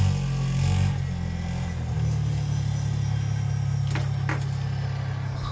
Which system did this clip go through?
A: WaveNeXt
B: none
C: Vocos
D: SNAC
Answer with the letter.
B